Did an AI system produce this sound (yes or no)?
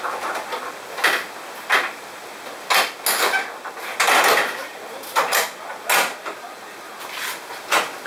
no